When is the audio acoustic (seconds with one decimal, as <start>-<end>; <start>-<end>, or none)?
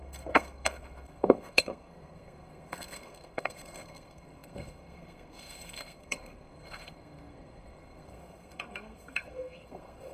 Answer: none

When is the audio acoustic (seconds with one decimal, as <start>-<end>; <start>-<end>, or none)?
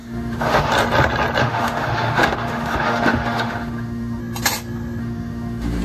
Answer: 0.7-1.4; 4.2-5.0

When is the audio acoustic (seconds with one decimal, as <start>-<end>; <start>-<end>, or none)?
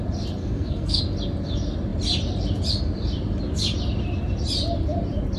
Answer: 0.0-0.4; 1.0-5.4